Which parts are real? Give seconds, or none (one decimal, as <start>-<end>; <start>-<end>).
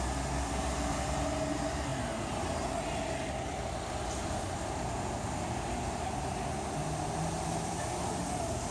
0.0-8.7